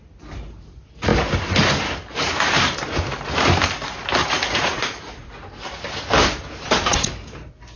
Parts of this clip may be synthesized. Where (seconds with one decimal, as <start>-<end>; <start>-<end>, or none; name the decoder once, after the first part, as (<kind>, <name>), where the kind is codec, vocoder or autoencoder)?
4.2-5.3 (vocoder, Vocos)